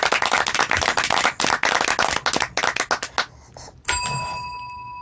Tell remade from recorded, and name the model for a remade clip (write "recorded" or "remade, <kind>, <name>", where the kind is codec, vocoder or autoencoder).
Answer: recorded